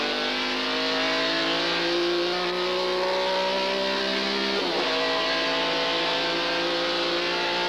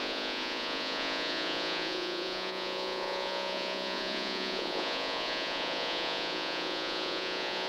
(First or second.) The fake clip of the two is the second